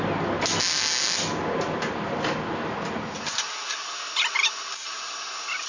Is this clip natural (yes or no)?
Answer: yes